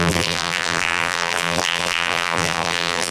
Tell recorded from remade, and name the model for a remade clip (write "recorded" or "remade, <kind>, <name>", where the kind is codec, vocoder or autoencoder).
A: remade, vocoder, BigVGAN v2